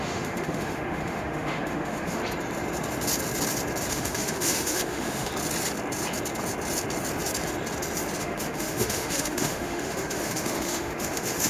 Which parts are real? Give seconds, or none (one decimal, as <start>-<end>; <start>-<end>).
2.2-3.9; 5.3-8.2